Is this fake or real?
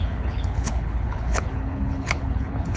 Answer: fake